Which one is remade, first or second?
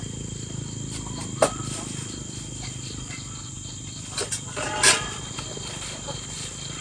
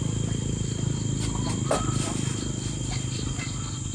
first